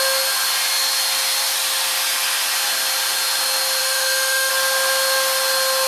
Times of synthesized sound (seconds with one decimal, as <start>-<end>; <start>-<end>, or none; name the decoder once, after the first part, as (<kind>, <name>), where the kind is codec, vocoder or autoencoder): 3.8-4.5 (autoencoder, DAC-VAE)